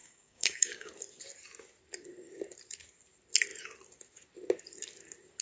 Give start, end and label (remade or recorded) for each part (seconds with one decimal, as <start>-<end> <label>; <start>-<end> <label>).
0.0-0.9 remade; 0.9-5.4 recorded